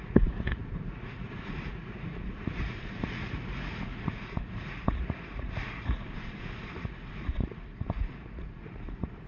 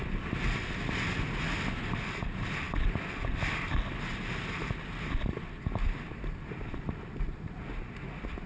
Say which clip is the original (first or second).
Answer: second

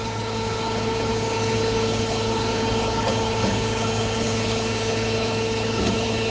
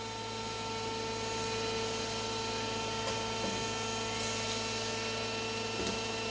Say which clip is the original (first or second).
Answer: second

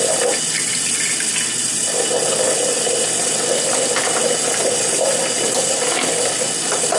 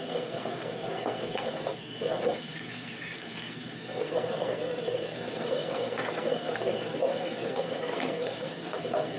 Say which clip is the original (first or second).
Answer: first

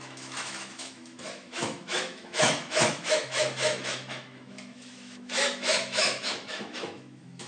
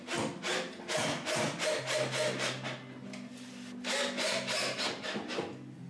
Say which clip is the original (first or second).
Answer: second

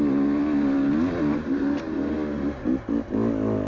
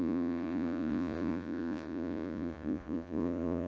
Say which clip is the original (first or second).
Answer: first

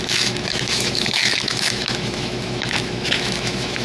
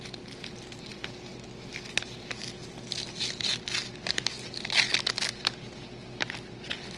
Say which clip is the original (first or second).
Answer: second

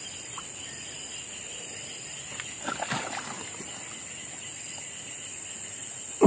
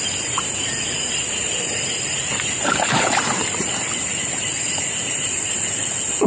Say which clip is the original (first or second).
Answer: first